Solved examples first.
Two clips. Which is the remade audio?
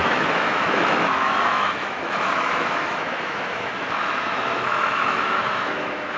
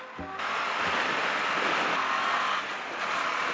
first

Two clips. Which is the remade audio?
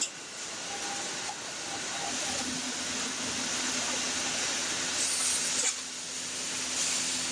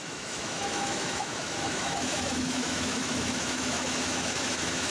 second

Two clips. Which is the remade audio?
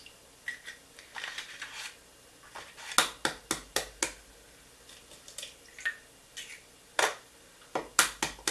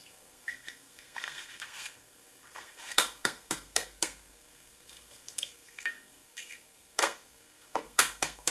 second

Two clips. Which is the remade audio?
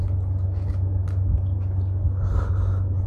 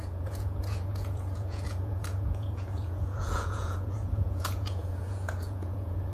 second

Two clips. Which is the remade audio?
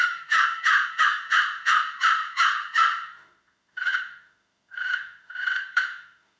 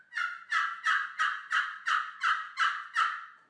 first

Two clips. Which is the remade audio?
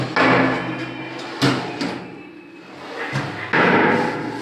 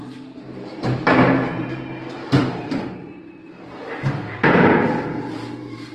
second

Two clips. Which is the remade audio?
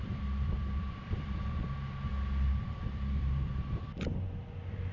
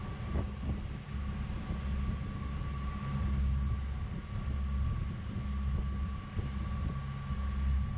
first